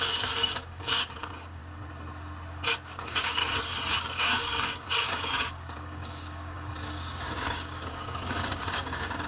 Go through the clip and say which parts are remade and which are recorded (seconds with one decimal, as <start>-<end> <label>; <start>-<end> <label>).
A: 0.0-1.6 remade; 1.6-3.0 recorded; 3.0-3.4 remade; 3.4-4.0 recorded; 4.0-9.3 remade